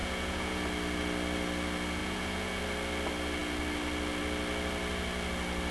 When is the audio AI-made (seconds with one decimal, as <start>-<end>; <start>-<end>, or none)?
0.0-0.6; 2.0-2.6